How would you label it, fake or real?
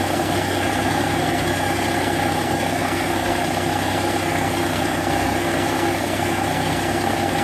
fake